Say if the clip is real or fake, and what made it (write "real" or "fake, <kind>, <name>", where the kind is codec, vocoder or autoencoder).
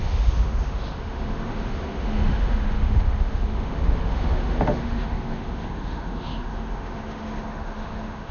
fake, autoencoder, DAC-VAE